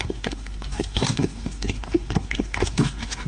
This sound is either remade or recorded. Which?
remade